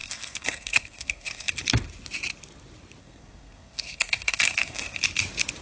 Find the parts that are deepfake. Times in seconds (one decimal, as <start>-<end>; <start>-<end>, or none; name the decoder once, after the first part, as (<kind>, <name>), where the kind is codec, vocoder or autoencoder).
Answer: 0.0-1.5 (codec, SNAC); 3.0-5.0